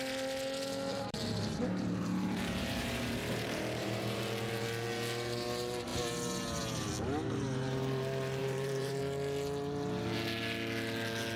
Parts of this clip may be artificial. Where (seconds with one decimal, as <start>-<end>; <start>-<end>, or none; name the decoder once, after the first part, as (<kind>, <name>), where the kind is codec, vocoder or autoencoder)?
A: 0.9-4.2 (vocoder, BigVGAN v2); 8.4-9.0